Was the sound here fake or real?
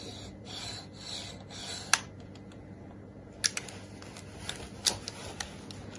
real